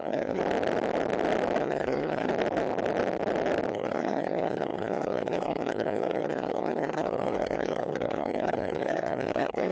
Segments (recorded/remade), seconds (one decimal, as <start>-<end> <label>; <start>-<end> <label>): 0.0-0.4 remade; 0.4-1.6 recorded; 1.6-2.3 remade; 2.3-3.7 recorded; 3.7-9.7 remade